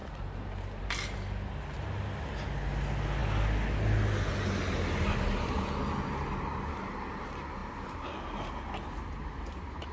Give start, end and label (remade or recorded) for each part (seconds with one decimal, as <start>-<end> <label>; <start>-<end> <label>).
0.0-9.9 recorded